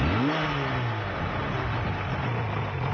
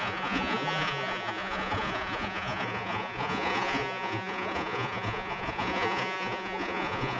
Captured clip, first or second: first